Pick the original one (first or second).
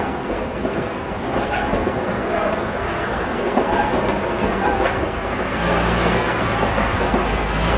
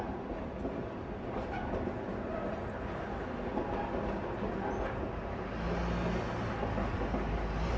second